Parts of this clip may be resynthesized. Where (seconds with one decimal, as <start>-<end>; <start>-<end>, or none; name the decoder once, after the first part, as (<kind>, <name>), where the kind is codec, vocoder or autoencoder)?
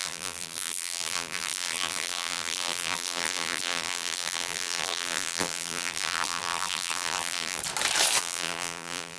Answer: 0.0-7.6 (vocoder, BigVGAN v2); 8.2-9.2